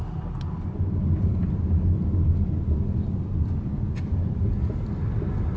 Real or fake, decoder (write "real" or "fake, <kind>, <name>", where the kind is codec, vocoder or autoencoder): real